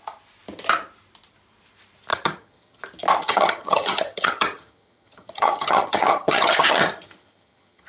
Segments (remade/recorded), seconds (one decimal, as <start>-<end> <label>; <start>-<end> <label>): 0.0-2.1 recorded; 2.1-2.8 remade; 2.8-3.2 recorded; 3.2-7.9 remade